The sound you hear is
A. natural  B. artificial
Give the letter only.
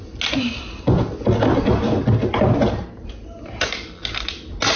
A